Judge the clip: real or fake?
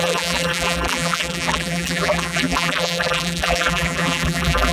fake